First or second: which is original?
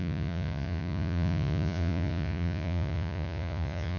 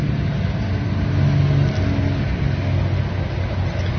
second